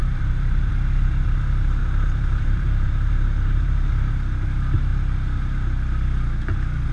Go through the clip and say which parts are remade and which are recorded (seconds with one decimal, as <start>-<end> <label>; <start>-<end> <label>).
0.0-0.7 remade; 0.7-1.8 recorded; 1.8-4.1 remade; 4.1-6.9 recorded